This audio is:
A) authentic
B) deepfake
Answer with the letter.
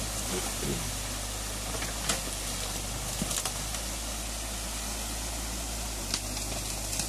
A